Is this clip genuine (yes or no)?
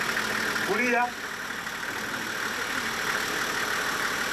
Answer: yes